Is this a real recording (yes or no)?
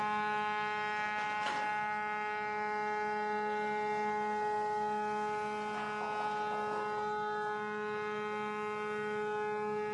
yes